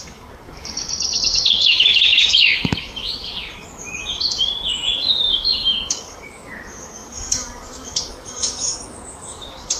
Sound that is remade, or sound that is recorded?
remade